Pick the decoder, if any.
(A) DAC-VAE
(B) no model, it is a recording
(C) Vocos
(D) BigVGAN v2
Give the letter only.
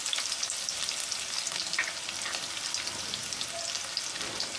B